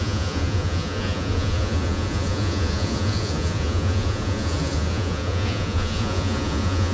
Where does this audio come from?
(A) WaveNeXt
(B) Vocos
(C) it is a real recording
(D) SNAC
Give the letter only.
B